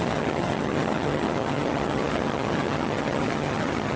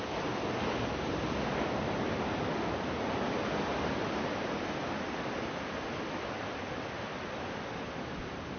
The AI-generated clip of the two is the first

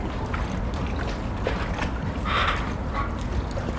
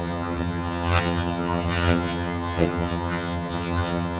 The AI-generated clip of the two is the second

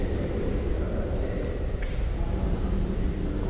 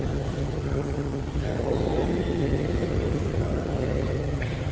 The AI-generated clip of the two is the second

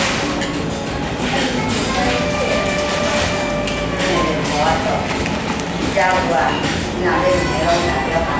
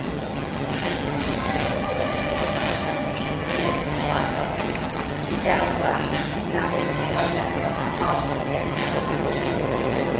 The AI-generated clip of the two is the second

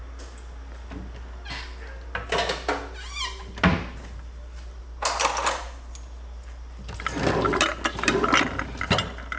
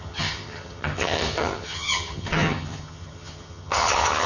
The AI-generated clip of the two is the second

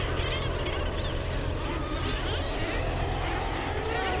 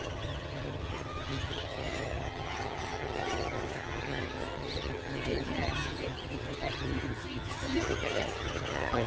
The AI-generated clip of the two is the second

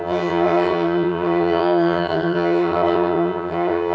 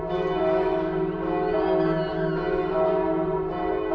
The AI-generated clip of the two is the first